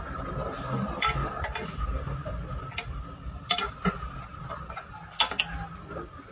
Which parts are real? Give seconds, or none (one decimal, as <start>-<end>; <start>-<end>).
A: 0.0-6.3